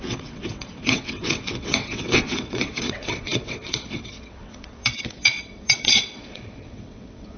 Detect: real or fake fake